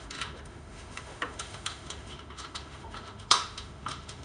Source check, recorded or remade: remade